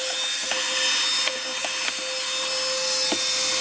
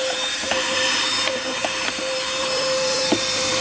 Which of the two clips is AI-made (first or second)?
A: second